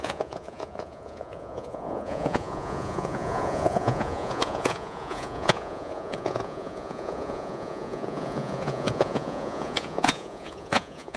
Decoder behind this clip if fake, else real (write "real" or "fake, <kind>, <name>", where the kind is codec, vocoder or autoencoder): fake, vocoder, Vocos